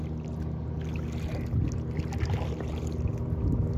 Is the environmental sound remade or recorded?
recorded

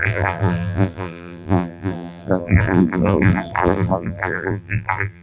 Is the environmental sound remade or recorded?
remade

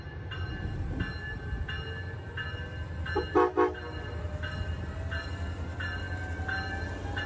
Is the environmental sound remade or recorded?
recorded